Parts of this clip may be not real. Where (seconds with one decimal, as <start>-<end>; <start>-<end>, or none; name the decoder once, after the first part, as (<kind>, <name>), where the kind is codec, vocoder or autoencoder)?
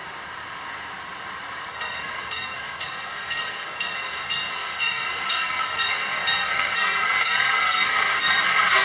1.7-8.8 (codec, SNAC)